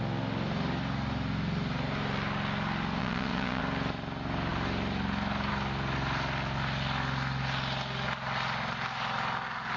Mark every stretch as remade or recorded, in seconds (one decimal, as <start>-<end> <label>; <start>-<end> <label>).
0.0-3.0 recorded; 3.0-3.6 remade; 3.6-9.8 recorded